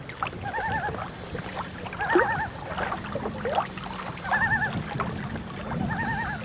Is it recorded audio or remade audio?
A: recorded